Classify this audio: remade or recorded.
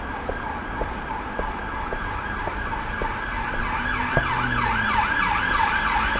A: recorded